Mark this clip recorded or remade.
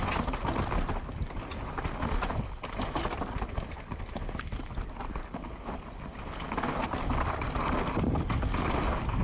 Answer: recorded